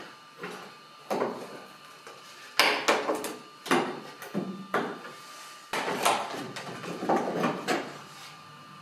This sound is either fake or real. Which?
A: real